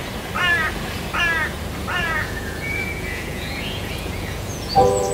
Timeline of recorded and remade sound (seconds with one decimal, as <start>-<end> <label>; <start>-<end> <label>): 0.0-2.0 recorded; 2.0-5.1 remade